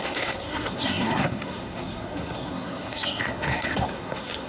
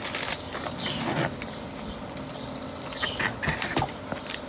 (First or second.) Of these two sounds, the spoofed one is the first